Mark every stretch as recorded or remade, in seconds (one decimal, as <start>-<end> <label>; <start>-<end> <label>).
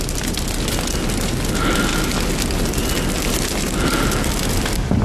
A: 0.0-5.0 recorded